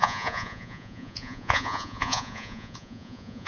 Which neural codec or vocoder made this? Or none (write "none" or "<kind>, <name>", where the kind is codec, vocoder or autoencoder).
vocoder, Vocos